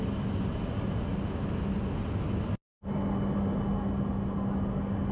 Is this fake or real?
real